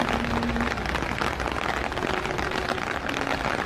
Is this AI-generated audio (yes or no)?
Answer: no